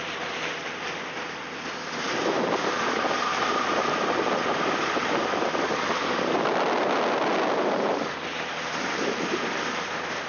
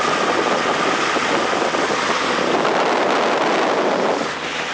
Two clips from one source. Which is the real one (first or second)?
second